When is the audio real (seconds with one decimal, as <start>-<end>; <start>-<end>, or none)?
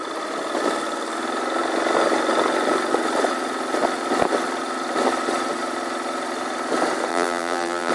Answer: 0.0-7.1